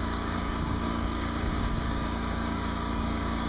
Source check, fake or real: fake